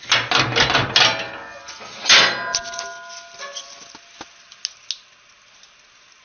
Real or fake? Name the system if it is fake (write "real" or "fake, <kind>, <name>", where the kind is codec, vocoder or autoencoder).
real